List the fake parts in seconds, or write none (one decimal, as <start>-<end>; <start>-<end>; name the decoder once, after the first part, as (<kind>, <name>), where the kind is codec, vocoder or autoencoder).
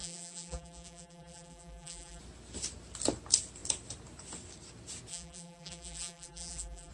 0.0-2.2 (vocoder, BigVGAN v2); 5.1-6.9